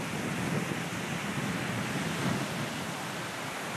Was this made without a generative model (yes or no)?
yes